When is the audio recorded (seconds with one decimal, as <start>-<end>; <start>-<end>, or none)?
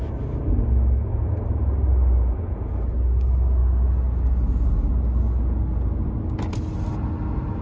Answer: 0.0-7.6